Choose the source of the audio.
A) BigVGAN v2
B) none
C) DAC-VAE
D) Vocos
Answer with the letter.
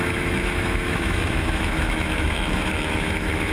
C